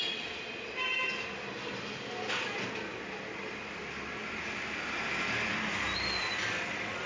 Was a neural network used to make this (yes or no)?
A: no